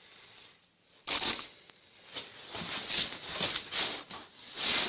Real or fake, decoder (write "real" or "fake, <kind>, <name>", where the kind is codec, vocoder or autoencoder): real